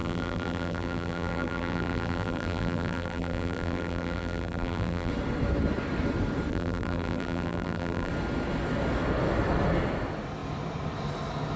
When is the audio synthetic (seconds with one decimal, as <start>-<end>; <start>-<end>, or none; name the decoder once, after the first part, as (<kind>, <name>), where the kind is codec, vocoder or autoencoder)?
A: 0.0-5.1 (vocoder, BigVGAN v2); 6.5-8.1